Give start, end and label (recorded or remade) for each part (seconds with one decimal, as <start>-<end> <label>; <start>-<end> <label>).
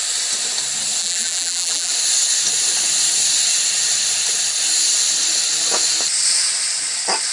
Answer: 0.0-1.0 recorded; 1.0-1.9 remade; 1.9-7.3 recorded